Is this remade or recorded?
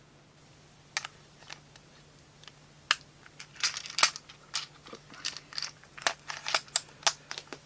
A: recorded